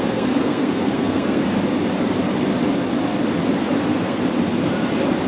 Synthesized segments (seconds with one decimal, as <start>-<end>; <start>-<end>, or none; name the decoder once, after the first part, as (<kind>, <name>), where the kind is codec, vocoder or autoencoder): 0.0-1.4 (codec, SNAC); 3.8-4.2